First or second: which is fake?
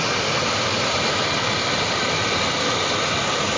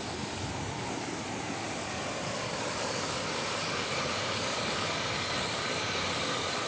second